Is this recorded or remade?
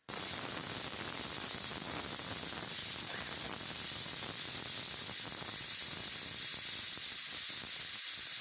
recorded